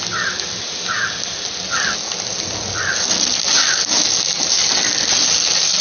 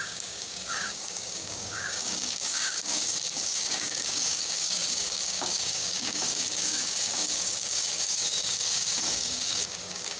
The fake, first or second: second